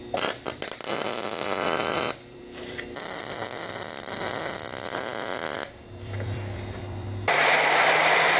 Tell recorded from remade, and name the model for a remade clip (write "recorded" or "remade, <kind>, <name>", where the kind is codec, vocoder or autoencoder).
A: remade, vocoder, BigVGAN v2